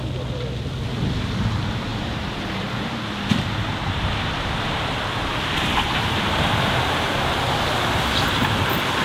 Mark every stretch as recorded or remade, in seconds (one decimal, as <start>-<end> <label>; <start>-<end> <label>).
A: 0.0-1.9 recorded; 1.9-2.9 remade; 2.9-9.0 recorded

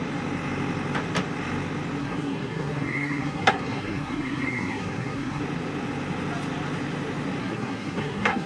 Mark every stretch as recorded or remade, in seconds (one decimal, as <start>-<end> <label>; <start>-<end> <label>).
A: 0.0-2.0 recorded; 2.0-5.4 remade; 5.4-7.4 recorded; 7.4-8.5 remade

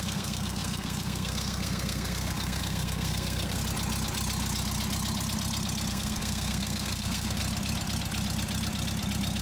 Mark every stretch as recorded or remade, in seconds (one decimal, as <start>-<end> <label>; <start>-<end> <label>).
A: 0.0-3.6 remade; 3.6-5.9 recorded; 5.9-7.4 remade; 7.4-9.4 recorded

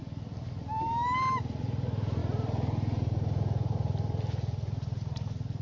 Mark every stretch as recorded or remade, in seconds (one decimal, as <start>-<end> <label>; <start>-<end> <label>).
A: 0.0-5.6 recorded

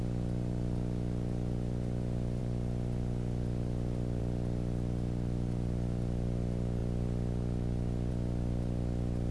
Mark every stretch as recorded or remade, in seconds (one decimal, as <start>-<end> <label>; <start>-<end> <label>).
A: 0.0-9.3 recorded